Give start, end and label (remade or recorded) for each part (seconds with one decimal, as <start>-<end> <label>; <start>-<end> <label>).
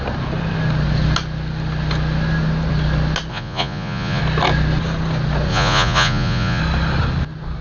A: 0.0-3.3 recorded; 3.3-4.2 remade; 4.2-5.5 recorded; 5.5-6.6 remade; 6.6-7.6 recorded